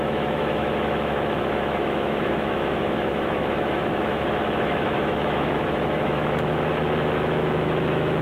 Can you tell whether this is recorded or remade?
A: remade